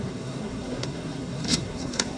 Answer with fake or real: fake